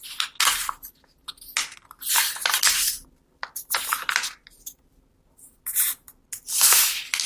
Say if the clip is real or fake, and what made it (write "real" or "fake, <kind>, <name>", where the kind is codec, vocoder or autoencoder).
real